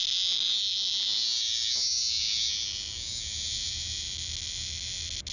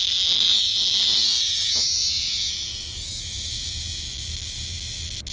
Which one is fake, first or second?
second